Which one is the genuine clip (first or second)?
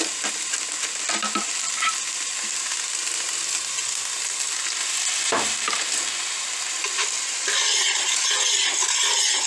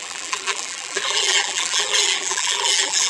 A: first